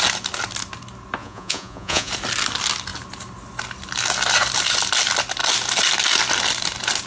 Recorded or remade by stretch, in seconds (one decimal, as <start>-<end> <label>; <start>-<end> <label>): 0.0-1.2 recorded; 1.2-2.1 remade; 2.1-7.1 recorded

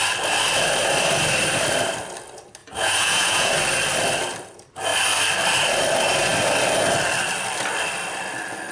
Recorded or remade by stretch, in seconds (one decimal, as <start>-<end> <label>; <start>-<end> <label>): 0.0-2.6 recorded; 2.6-3.5 remade; 3.5-8.7 recorded

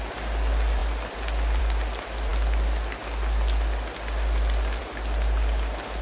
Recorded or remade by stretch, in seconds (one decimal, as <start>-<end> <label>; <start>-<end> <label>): 0.0-6.0 recorded

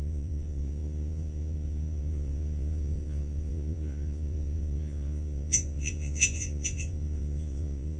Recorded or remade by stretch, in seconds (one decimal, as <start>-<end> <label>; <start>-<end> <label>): 0.0-8.0 remade

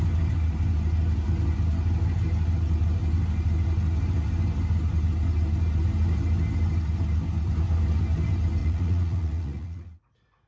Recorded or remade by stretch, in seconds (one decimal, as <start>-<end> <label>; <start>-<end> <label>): 0.0-8.6 recorded; 8.6-10.0 remade; 10.0-10.5 recorded

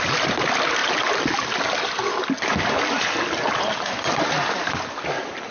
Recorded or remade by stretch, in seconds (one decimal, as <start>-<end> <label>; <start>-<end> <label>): 0.0-5.5 recorded

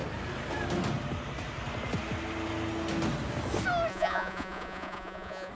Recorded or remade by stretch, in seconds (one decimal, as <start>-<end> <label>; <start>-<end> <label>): 0.0-3.9 recorded; 3.9-5.5 remade